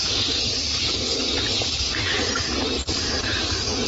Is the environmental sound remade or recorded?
recorded